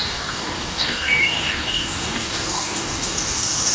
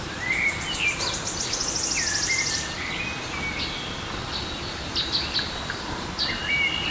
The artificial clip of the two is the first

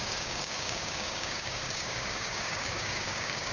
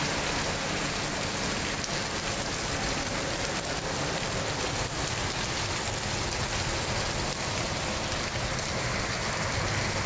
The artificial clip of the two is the first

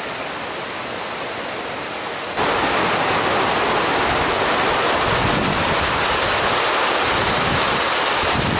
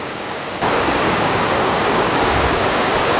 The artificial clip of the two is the second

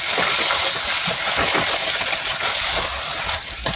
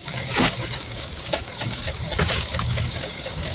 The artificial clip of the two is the second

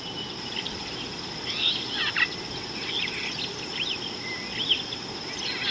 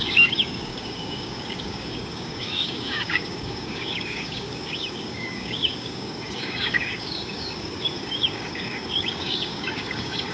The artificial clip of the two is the second